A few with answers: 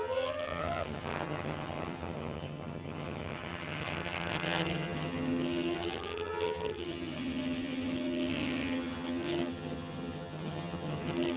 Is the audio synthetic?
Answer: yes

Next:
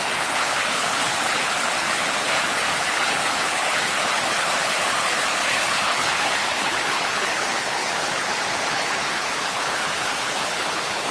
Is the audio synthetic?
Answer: yes